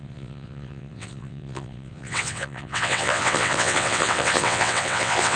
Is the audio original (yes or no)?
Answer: no